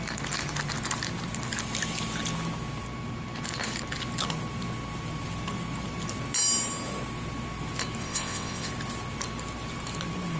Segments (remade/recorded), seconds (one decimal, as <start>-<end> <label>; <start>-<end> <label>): 0.0-8.0 recorded; 8.0-8.7 remade; 8.7-10.4 recorded